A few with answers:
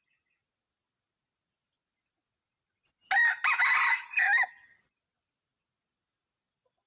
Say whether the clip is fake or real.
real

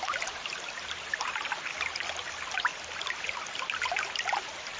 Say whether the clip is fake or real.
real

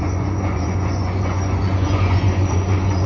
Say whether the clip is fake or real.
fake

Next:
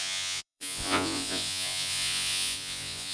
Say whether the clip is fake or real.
fake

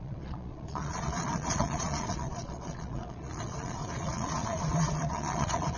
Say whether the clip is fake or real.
fake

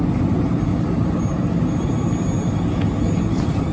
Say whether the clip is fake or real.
real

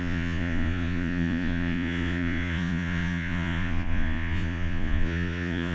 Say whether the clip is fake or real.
fake